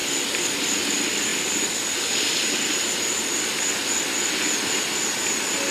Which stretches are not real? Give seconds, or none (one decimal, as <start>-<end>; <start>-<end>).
none